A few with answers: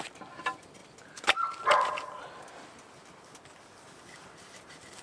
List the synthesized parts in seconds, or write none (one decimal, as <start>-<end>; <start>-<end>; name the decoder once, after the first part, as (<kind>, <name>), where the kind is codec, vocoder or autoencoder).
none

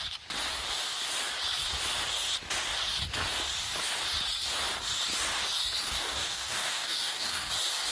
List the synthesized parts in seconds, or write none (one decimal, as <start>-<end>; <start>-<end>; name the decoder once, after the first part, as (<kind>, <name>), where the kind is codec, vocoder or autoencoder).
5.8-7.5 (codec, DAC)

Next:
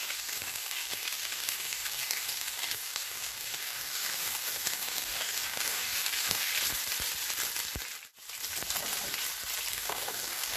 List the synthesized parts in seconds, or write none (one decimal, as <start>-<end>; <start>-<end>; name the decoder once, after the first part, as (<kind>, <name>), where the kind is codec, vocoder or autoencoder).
0.0-6.5 (codec, DAC); 9.7-10.6

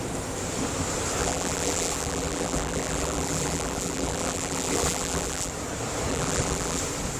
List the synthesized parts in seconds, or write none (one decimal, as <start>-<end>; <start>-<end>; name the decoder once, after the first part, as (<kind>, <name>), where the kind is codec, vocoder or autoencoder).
1.2-5.5 (vocoder, BigVGAN v2); 6.1-6.8

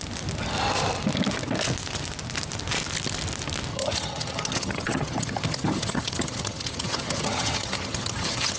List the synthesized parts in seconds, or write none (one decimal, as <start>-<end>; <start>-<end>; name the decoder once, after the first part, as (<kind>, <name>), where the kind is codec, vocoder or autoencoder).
3.7-8.6 (vocoder, HiFi-GAN)

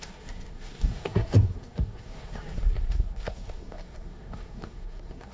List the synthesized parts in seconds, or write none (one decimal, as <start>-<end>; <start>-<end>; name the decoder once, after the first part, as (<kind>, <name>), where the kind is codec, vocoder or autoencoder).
0.0-5.3 (codec, SNAC)

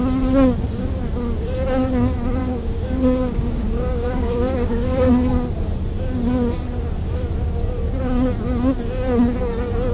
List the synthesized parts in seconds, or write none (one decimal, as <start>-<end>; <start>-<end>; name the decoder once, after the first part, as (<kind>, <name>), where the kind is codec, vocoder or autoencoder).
2.4-5.1 (codec, DAC)

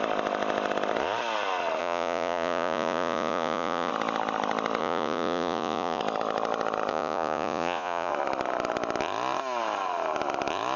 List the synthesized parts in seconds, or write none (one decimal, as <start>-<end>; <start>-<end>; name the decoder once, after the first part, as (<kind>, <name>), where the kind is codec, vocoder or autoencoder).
1.8-3.9 (vocoder, Vocos); 4.8-6.0; 6.9-8.1